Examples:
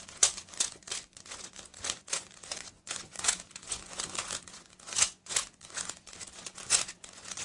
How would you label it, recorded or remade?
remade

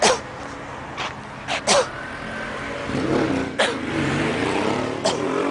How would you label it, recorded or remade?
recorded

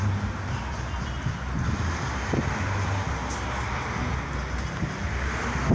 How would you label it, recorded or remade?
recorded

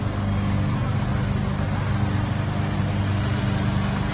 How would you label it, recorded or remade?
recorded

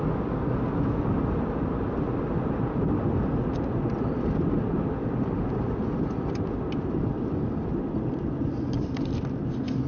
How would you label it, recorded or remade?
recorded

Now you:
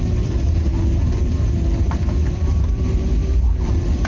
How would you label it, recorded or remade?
remade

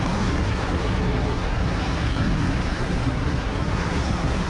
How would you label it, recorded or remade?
remade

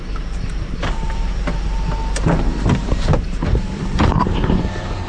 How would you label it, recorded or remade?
remade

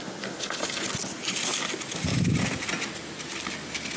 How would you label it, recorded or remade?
recorded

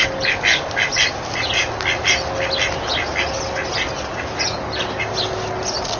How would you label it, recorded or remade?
recorded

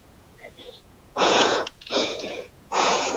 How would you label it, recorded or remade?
remade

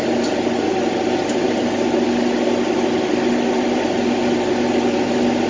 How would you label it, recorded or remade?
recorded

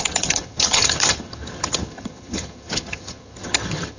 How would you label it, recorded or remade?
remade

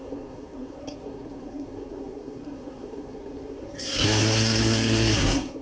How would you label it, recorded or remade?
remade